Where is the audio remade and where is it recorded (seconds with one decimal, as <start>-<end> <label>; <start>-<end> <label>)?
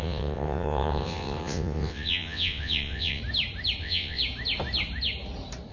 0.0-3.2 remade; 3.2-3.8 recorded; 3.8-4.2 remade; 4.2-5.7 recorded